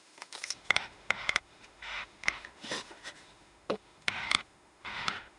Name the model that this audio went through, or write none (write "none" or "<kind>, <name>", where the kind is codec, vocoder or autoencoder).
autoencoder, DAC-VAE